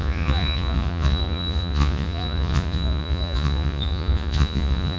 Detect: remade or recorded remade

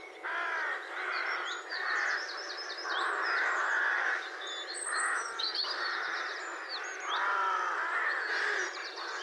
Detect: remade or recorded recorded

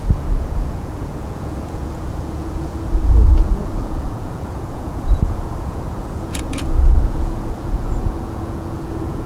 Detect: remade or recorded remade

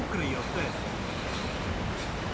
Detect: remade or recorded recorded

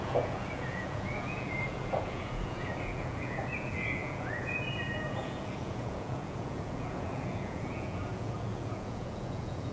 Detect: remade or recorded remade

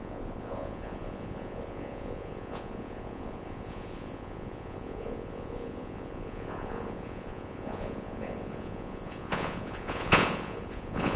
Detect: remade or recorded remade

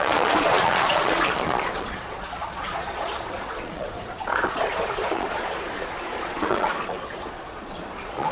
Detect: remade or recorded remade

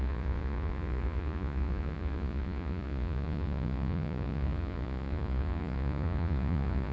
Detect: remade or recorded remade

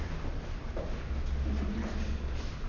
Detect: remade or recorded recorded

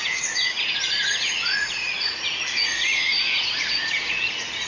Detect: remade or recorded remade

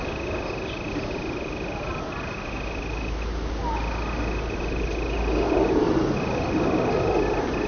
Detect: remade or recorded recorded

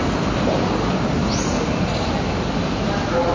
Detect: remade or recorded recorded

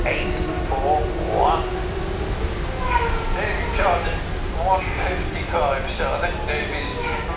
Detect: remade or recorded recorded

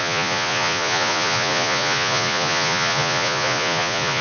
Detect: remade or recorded remade